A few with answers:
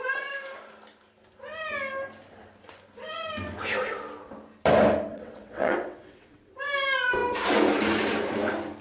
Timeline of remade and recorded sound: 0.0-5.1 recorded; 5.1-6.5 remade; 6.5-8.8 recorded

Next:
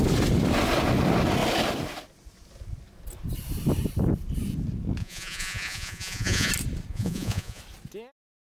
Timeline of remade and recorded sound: 0.0-5.0 recorded; 5.0-6.5 remade; 6.5-6.9 recorded; 6.9-7.6 remade; 7.6-8.5 recorded